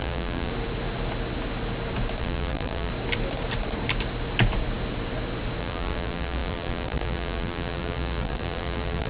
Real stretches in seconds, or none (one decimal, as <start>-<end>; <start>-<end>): 0.5-2.2; 2.9-5.6